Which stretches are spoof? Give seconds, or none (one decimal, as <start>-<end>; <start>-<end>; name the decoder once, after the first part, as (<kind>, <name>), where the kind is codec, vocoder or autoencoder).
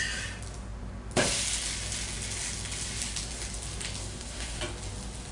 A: 4.0-4.6 (codec, SNAC)